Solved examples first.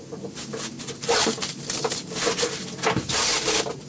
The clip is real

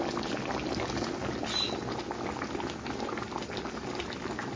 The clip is real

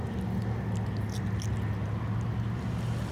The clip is real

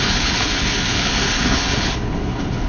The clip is fake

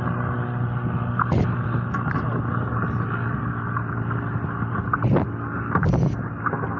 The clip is real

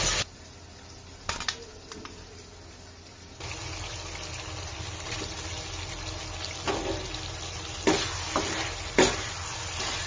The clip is real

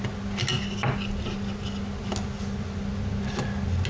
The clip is real